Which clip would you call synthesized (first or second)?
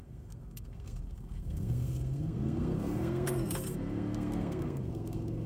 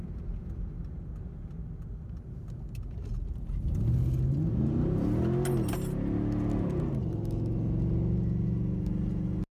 first